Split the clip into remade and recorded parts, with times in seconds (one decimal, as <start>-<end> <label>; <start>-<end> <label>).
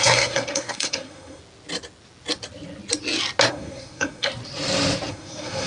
0.0-1.4 remade; 1.4-3.5 recorded; 3.5-4.3 remade; 4.3-5.1 recorded; 5.1-5.7 remade